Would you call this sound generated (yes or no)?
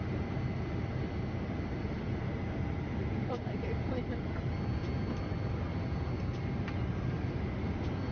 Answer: no